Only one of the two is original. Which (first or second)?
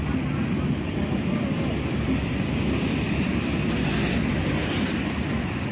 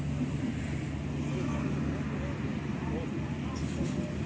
second